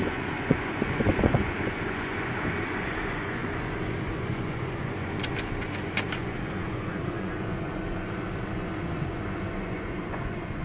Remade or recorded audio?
remade